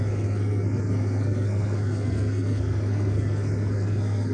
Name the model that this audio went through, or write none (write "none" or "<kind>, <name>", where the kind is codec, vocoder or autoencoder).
codec, SNAC